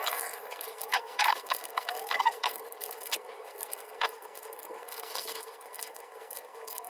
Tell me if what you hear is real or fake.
fake